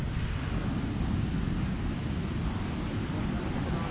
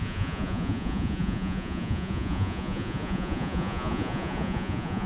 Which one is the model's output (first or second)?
second